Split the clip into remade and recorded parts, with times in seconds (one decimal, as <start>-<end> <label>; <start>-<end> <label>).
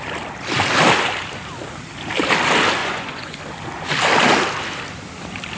0.0-2.8 recorded; 2.8-3.4 remade; 3.4-5.6 recorded